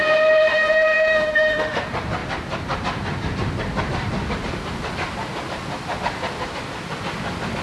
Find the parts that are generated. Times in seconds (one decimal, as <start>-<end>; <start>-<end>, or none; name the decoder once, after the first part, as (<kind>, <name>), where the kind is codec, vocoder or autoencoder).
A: 0.5-1.8 (autoencoder, DAC-VAE)